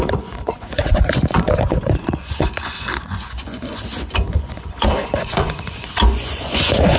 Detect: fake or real fake